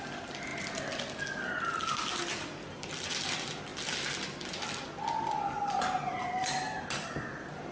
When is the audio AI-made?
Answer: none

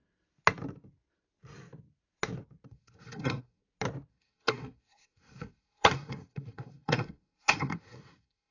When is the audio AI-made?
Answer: 2.7-3.6 (codec, SNAC); 4.1-8.5

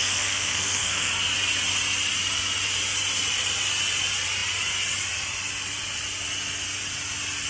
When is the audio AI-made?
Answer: 0.0-1.1 (codec, SNAC)

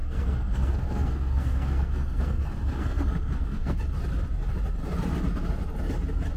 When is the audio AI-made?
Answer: 0.0-3.8 (codec, SNAC)

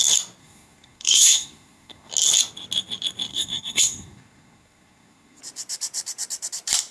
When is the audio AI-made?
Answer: 0.4-2.1 (codec, SNAC); 3.3-5.4